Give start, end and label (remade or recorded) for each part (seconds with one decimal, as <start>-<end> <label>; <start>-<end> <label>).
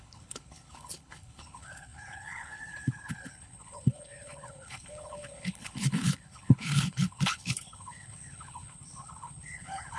0.0-10.0 remade